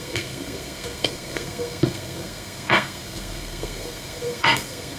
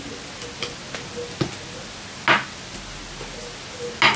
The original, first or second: second